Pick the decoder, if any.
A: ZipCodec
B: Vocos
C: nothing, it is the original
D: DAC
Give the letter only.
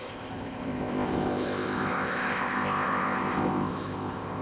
A